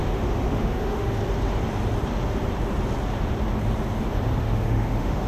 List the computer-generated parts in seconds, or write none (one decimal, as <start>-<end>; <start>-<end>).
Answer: 0.0-1.2; 4.4-5.3